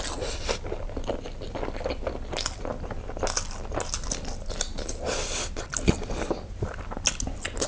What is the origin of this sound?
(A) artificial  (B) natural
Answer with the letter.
B